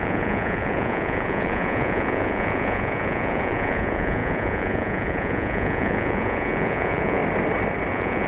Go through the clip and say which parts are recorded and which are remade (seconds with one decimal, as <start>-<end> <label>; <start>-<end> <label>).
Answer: 0.0-7.2 remade; 7.2-7.9 recorded; 7.9-8.3 remade